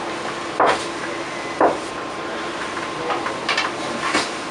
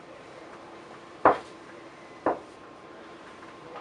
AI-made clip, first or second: second